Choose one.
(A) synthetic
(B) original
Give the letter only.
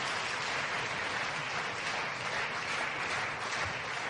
B